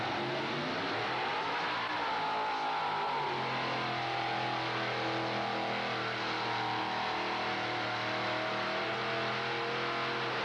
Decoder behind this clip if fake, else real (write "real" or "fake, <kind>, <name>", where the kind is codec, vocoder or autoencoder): real